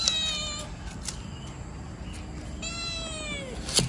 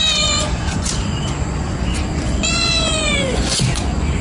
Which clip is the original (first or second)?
first